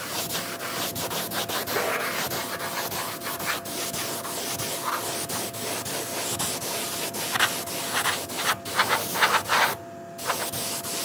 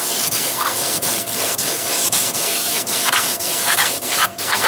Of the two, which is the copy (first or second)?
second